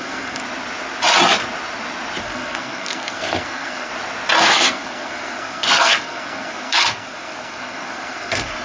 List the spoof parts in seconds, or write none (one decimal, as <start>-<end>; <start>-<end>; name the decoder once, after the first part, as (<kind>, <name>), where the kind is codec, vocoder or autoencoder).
0.0-0.4 (codec, SNAC); 2.2-3.9; 4.4-8.6